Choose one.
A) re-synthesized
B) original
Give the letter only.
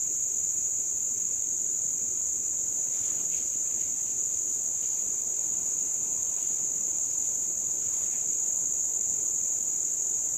A